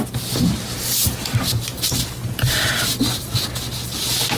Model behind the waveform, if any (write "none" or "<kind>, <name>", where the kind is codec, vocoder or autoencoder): none